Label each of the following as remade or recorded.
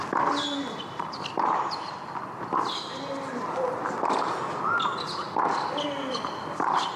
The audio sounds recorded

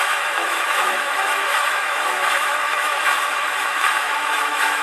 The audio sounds remade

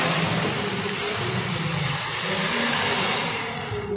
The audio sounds recorded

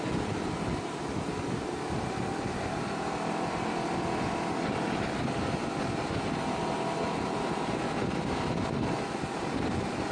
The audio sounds recorded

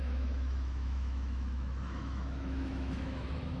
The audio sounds remade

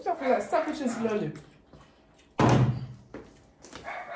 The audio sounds recorded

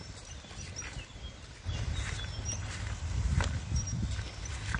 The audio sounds recorded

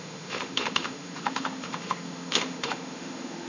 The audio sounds remade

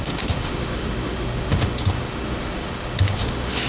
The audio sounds remade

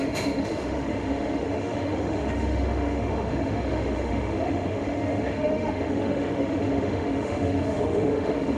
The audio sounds remade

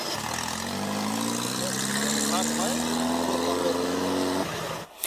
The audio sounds recorded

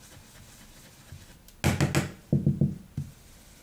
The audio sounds recorded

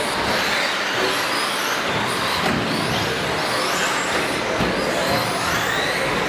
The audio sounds recorded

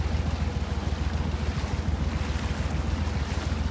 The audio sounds recorded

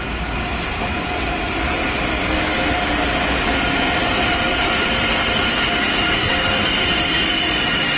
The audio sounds recorded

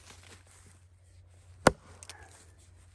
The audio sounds recorded